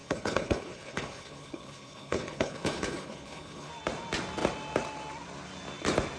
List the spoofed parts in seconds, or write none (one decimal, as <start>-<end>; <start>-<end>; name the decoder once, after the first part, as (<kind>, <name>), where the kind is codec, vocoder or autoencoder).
0.0-3.7 (codec, HILCodec)